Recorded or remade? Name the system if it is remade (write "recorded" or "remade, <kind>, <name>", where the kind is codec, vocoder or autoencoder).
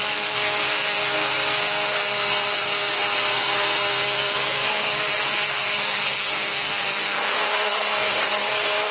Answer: remade, codec, SNAC